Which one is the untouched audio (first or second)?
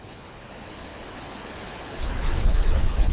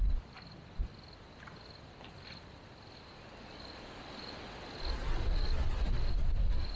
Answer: second